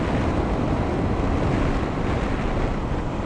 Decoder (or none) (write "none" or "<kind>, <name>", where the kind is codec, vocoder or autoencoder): none